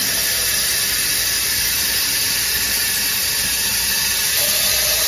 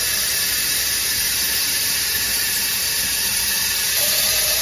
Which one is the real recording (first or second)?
first